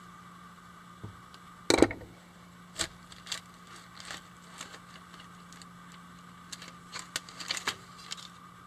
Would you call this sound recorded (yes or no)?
yes